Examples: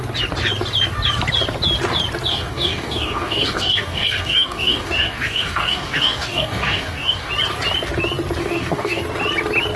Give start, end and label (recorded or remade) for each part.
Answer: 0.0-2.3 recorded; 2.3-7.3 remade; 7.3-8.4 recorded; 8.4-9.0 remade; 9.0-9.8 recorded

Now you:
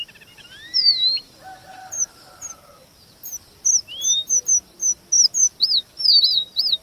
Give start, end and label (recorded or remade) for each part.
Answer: 0.0-6.8 recorded

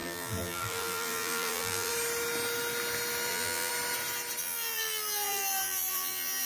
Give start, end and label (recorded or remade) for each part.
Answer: 0.0-1.9 remade; 1.9-3.3 recorded; 3.3-3.7 remade; 3.7-4.4 recorded; 4.4-6.5 remade

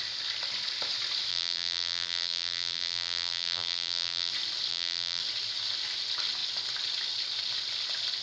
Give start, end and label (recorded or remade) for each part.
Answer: 0.0-1.3 recorded; 1.3-4.3 remade; 4.3-4.7 recorded; 4.7-5.2 remade; 5.2-8.2 recorded

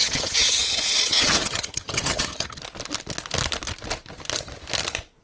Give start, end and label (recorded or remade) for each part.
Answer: 0.0-2.6 remade; 2.6-5.2 recorded

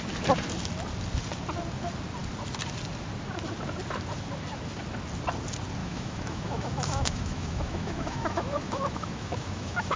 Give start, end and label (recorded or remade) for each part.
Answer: 0.0-5.8 recorded; 5.8-10.0 remade

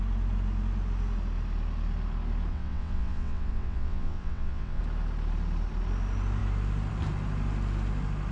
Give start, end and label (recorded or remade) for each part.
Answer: 0.0-2.5 recorded; 2.5-4.8 remade; 4.8-8.3 recorded